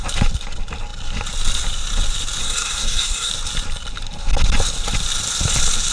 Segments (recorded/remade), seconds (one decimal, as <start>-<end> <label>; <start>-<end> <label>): 0.0-2.4 recorded; 2.4-3.3 remade; 3.3-5.9 recorded